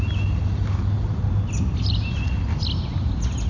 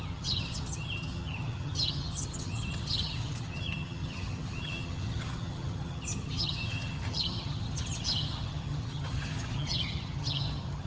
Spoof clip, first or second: second